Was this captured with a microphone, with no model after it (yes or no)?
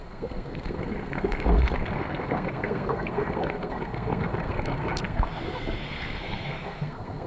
no